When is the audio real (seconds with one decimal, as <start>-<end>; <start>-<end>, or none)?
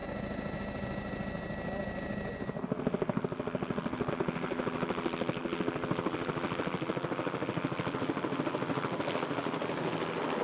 0.0-10.4